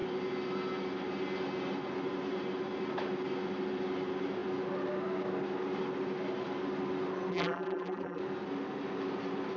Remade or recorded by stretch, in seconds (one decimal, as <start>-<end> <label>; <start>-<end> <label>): 0.0-7.3 recorded; 7.3-8.2 remade; 8.2-9.6 recorded